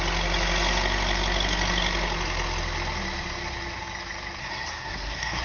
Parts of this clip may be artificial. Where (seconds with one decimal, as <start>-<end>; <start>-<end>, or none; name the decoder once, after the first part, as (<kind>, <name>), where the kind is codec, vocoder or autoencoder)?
4.4-5.4 (codec, SNAC)